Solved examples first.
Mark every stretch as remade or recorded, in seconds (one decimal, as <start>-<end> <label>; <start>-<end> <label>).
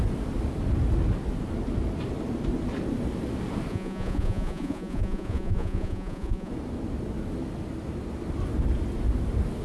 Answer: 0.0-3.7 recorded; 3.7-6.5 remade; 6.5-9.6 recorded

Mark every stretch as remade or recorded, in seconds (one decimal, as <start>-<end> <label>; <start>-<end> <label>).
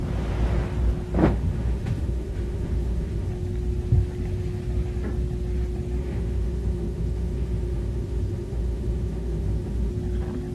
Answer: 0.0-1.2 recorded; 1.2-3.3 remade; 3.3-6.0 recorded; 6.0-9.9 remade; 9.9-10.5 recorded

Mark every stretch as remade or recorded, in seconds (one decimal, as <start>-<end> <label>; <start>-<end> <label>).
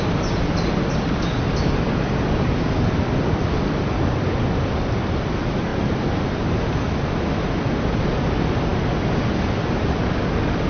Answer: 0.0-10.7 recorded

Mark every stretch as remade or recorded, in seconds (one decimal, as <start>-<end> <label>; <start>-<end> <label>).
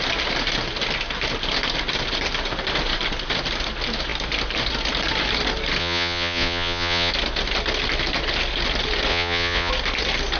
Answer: 0.0-5.8 recorded; 5.8-7.1 remade; 7.1-9.1 recorded; 9.1-9.7 remade; 9.7-10.4 recorded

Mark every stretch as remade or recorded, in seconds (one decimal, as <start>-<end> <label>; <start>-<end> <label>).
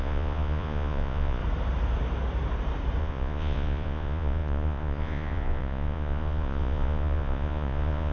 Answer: 0.0-1.4 remade; 1.4-3.0 recorded; 3.0-8.1 remade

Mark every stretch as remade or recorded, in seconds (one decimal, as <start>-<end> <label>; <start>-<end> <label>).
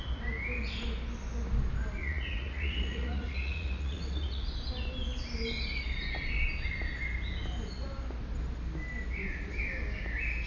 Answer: 0.0-2.0 recorded; 2.0-4.5 remade; 4.5-10.5 recorded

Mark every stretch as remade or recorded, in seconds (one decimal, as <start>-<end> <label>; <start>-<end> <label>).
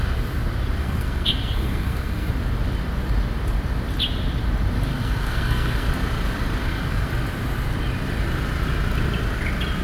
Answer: 0.0-0.8 recorded; 0.8-2.3 remade; 2.3-4.9 recorded; 4.9-5.9 remade; 5.9-6.6 recorded; 6.6-7.1 remade; 7.1-9.8 recorded